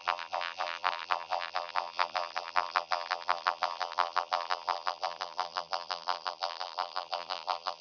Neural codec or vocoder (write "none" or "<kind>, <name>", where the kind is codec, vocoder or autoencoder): vocoder, BigVGAN v2